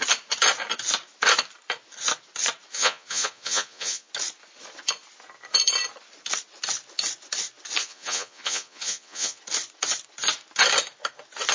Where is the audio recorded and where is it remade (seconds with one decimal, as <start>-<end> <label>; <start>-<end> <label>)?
0.0-2.7 recorded; 2.7-4.1 remade; 4.1-7.8 recorded; 7.8-9.4 remade; 9.4-11.5 recorded